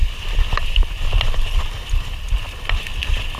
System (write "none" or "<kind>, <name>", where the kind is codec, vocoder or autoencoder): none